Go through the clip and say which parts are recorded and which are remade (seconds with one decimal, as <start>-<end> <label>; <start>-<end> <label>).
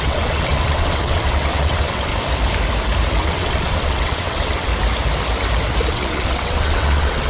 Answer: 0.0-2.1 remade; 2.1-3.2 recorded; 3.2-4.7 remade; 4.7-5.9 recorded; 5.9-7.3 remade